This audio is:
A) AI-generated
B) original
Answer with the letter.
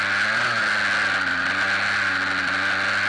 B